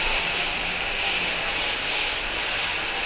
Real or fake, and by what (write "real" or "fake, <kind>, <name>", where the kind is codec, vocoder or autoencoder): fake, vocoder, BigVGAN v2